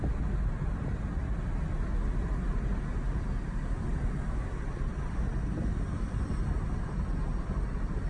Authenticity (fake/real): real